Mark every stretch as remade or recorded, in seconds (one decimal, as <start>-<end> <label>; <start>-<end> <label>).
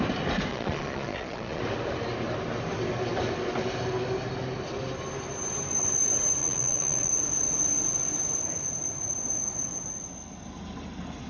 0.0-0.5 recorded; 0.5-1.6 remade; 1.6-6.4 recorded; 6.4-7.1 remade; 7.1-11.3 recorded